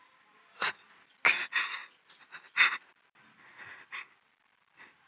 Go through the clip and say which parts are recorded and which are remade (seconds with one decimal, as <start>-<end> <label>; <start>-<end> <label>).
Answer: 0.0-5.1 recorded